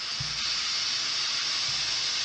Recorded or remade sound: recorded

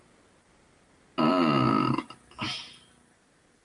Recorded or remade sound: recorded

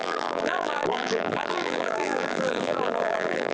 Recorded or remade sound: remade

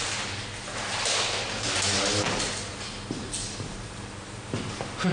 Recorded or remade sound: recorded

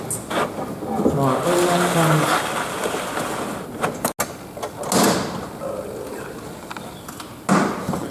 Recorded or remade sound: recorded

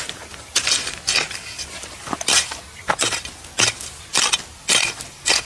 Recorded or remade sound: recorded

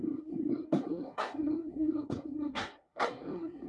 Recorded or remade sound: remade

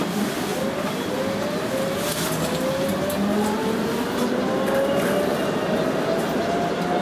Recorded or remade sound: recorded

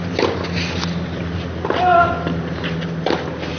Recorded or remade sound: recorded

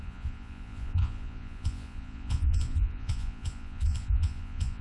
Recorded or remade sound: remade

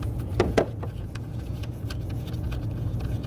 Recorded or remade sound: remade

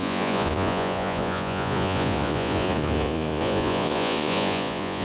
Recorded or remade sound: remade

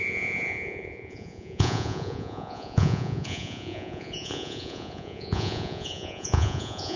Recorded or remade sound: remade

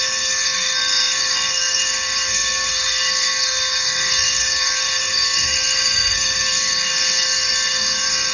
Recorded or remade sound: remade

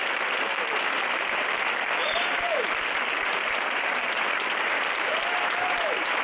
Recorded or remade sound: remade